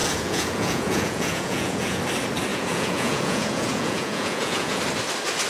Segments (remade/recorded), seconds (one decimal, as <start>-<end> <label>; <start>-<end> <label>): 0.0-2.0 remade; 2.0-2.5 recorded; 2.5-4.8 remade; 4.8-5.5 recorded